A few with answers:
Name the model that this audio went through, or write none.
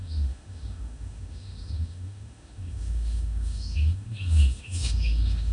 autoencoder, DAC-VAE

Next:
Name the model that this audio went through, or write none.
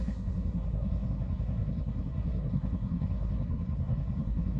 codec, SNAC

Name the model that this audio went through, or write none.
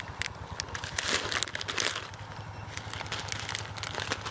none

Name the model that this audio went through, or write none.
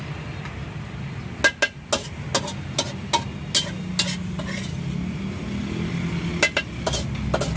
none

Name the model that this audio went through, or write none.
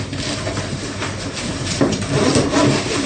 none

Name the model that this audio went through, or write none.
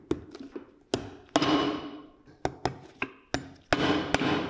none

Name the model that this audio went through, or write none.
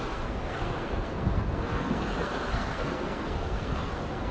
codec, SNAC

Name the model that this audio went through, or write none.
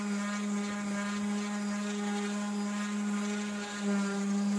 none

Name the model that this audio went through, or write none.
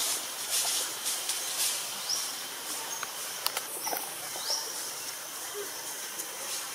vocoder, BigVGAN v2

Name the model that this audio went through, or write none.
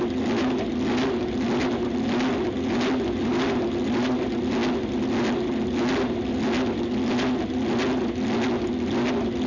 none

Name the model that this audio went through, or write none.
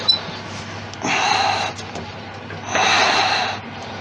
none